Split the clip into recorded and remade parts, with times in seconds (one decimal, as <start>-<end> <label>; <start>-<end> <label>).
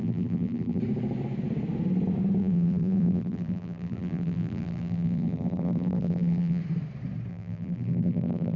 0.0-0.8 remade; 0.8-2.4 recorded; 2.4-6.6 remade; 6.6-7.3 recorded; 7.3-8.6 remade